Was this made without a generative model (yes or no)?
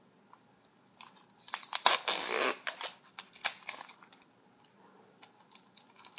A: yes